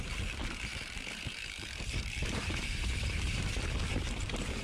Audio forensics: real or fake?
fake